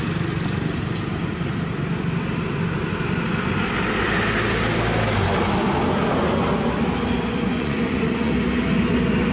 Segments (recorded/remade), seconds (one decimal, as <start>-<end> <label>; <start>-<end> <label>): 0.0-7.5 recorded; 7.5-8.3 remade; 8.3-9.3 recorded